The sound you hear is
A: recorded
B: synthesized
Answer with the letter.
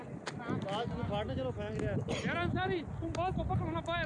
A